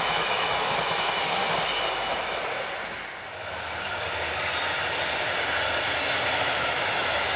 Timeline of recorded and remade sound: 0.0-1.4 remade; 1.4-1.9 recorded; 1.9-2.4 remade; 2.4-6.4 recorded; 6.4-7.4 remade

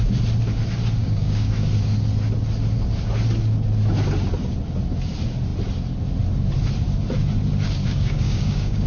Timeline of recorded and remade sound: 0.0-1.0 recorded; 1.0-1.5 remade; 1.5-7.8 recorded; 7.8-8.9 remade

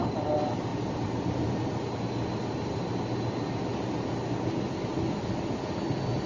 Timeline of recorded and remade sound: 0.0-6.3 recorded

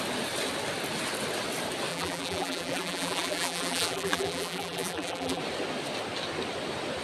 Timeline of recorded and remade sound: 0.0-1.9 recorded; 1.9-5.4 remade; 5.4-7.0 recorded

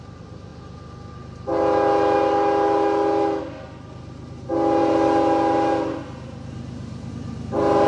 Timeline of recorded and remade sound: 0.0-7.9 recorded

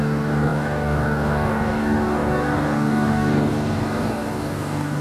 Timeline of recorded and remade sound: 0.0-5.0 remade

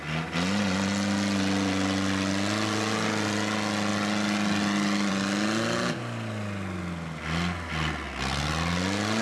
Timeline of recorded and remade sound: 0.0-9.2 recorded

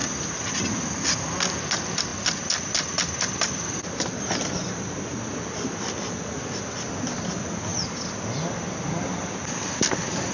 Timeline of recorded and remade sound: 0.0-7.7 recorded; 7.7-8.6 remade; 8.6-10.3 recorded